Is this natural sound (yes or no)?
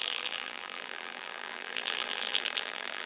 no